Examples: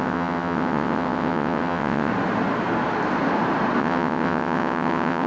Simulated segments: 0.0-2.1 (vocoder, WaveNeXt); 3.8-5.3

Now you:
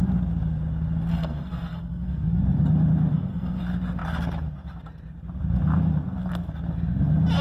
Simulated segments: 1.1-2.4 (codec, SNAC); 3.1-3.6

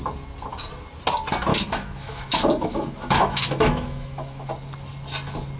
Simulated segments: 1.5-4.5 (autoencoder, DAC-VAE)